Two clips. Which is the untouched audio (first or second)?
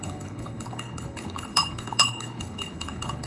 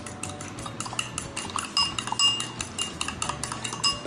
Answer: second